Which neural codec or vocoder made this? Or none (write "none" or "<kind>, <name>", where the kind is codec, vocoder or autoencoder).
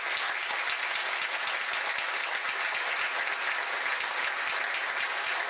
none